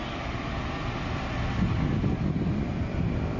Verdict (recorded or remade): recorded